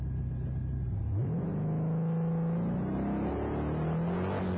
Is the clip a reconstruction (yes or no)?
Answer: no